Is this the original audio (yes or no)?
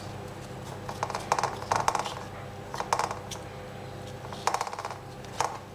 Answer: yes